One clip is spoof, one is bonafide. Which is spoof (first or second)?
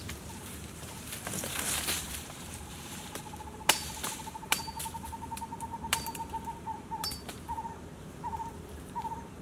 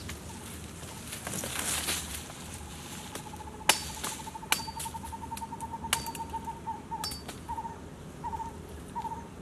first